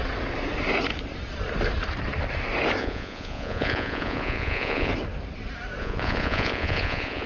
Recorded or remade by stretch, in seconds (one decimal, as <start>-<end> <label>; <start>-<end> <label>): 0.0-2.8 recorded; 2.8-4.9 remade; 4.9-5.8 recorded; 5.8-7.3 remade